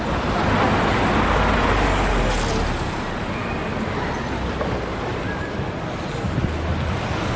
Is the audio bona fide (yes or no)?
yes